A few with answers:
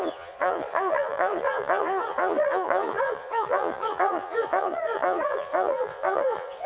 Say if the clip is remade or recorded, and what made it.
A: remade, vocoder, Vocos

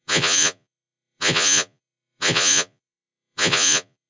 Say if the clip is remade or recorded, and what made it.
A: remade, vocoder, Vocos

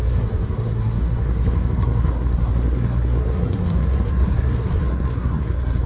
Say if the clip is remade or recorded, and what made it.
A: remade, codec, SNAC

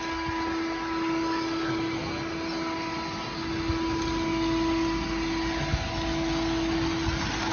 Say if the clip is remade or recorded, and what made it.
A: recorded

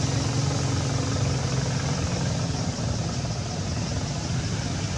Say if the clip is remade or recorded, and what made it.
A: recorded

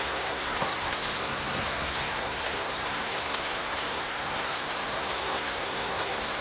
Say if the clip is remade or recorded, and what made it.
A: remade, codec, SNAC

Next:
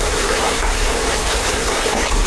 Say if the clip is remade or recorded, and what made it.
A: remade, codec, SNAC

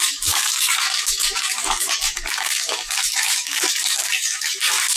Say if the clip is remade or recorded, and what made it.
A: remade, codec, DAC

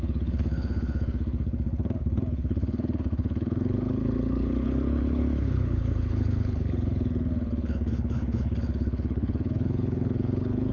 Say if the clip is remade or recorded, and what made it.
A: remade, codec, HILCodec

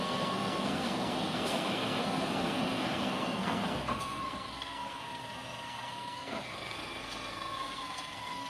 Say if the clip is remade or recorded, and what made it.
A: remade, codec, SNAC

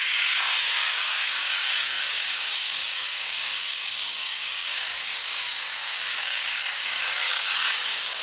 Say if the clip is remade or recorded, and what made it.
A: remade, codec, DAC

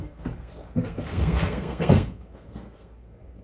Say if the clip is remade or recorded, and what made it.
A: remade, codec, SNAC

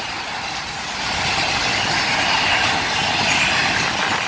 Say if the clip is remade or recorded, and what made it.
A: recorded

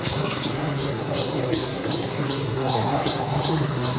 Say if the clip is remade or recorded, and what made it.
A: remade, codec, SNAC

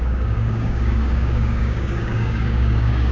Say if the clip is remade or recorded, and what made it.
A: remade, codec, DAC